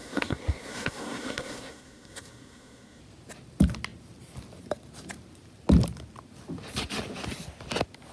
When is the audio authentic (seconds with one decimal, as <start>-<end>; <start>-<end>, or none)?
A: 3.0-8.1